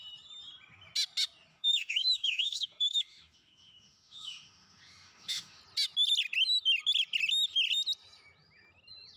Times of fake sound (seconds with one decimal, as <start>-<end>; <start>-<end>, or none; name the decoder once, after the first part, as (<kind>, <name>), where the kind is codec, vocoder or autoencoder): 1.5-5.6 (autoencoder, DAC-VAE)